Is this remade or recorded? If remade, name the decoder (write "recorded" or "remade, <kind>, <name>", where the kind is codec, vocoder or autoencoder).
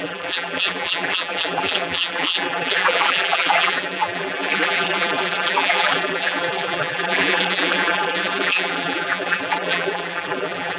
remade, vocoder, BigVGAN v2